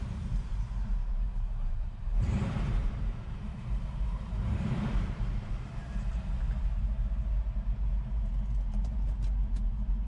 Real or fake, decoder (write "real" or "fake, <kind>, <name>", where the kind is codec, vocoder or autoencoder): fake, vocoder, BigVGAN v2